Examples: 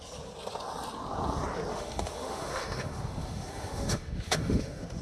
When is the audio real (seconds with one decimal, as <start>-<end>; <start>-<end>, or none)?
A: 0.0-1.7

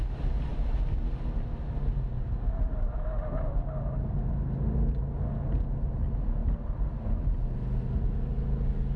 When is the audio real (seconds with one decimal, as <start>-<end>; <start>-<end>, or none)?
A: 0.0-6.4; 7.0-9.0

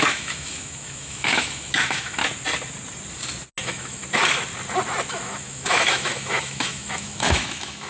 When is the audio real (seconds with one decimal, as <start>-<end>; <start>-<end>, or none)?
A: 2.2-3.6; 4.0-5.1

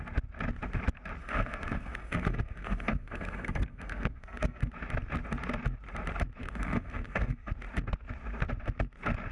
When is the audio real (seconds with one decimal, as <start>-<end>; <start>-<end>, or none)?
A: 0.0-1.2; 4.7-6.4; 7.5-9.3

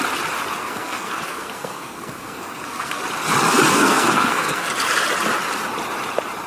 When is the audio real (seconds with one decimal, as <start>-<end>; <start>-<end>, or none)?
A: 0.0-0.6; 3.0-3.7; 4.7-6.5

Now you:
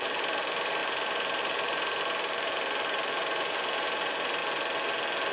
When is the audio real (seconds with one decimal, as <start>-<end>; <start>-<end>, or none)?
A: 4.4-5.3

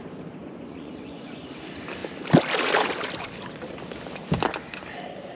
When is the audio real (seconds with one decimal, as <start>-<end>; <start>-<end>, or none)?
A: 0.0-0.4; 1.4-5.3